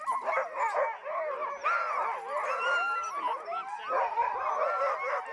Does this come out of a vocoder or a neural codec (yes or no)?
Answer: no